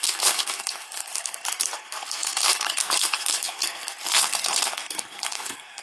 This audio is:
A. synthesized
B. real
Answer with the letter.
A